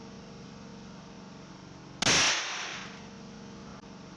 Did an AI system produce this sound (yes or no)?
no